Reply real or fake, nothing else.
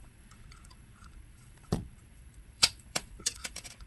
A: fake